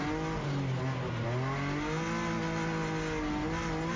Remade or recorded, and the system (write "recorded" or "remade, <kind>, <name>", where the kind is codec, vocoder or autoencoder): recorded